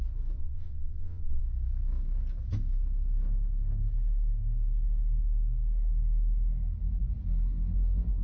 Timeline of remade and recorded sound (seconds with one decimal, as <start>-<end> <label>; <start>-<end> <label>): 0.0-0.4 recorded; 0.4-1.4 remade; 1.4-8.2 recorded